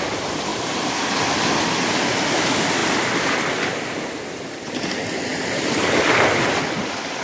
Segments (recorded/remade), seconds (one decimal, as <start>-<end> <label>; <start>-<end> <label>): 0.0-7.2 recorded